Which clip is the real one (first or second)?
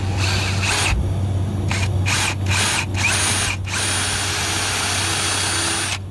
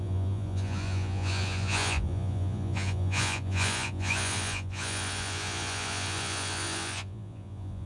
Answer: first